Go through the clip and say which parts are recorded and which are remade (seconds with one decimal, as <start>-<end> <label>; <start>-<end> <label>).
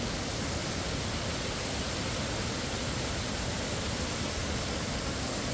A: 0.0-5.5 recorded